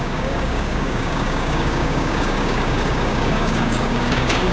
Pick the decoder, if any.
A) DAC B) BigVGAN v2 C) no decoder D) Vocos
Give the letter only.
A